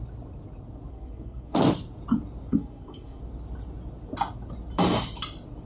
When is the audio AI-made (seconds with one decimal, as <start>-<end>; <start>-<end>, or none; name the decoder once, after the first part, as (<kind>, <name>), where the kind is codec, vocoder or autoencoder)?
0.9-1.6 (codec, SNAC); 2.5-3.2